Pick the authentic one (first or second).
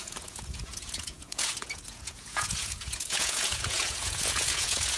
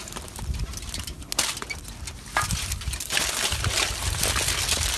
second